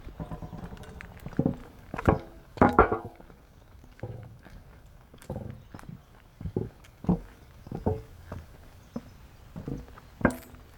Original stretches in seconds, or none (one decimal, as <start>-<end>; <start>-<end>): 0.0-1.6; 5.5-6.0; 8.9-10.8